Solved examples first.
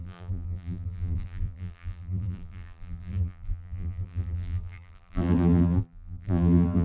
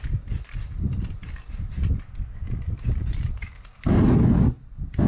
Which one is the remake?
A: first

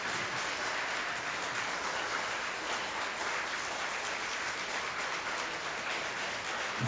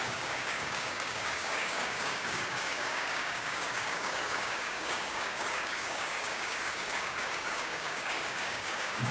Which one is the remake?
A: second